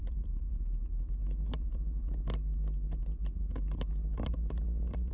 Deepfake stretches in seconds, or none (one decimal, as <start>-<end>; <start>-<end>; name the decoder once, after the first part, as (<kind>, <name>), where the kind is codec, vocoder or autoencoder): none